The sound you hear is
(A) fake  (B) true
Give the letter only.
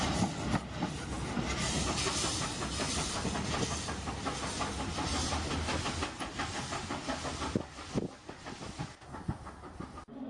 B